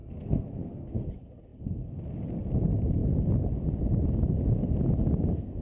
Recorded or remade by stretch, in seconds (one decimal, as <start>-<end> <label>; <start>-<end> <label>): 0.0-1.1 remade; 1.1-5.6 recorded